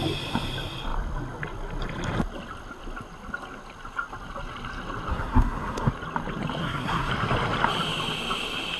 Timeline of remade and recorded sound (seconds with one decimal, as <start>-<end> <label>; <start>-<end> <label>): 0.0-5.1 recorded; 5.1-5.9 remade; 5.9-6.6 recorded; 6.6-7.1 remade; 7.1-8.8 recorded